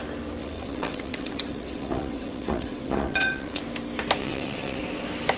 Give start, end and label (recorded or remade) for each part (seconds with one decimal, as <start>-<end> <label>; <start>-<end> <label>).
0.0-0.4 recorded; 0.4-3.6 remade; 3.6-4.2 recorded; 4.2-4.8 remade; 4.8-5.4 recorded